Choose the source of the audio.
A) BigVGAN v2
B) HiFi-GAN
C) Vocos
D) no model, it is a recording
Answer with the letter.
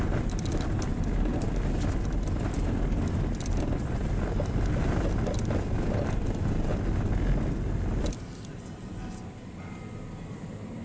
D